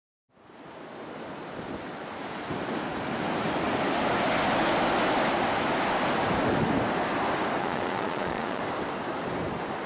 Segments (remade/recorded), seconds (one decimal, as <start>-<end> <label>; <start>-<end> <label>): 0.0-7.6 recorded; 7.6-8.6 remade; 8.6-9.9 recorded